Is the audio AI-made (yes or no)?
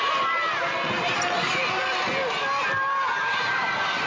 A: no